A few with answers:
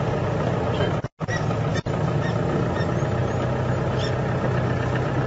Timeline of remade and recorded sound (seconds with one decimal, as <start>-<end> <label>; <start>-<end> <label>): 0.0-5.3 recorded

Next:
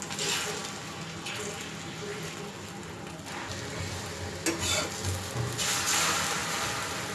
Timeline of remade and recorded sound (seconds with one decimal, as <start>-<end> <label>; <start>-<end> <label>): 0.0-7.1 recorded

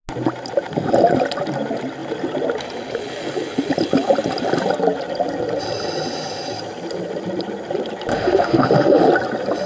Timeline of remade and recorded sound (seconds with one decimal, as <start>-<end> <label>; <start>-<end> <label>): 0.0-8.1 recorded; 8.1-9.1 remade; 9.1-9.7 recorded

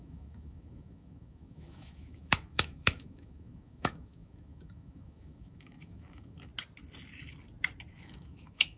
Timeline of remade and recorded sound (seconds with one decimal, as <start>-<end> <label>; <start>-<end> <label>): 0.0-6.5 remade; 6.5-7.9 recorded; 7.9-8.8 remade

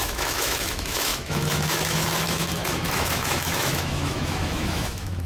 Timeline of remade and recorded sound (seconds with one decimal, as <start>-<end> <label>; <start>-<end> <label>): 0.0-5.3 remade